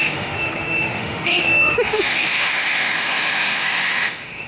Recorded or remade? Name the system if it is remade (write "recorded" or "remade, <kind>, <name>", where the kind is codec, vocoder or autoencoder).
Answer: remade, autoencoder, DAC-VAE